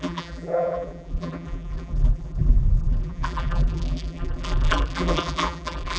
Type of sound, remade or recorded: remade